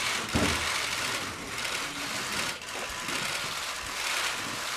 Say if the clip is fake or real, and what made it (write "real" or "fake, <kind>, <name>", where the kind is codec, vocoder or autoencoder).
real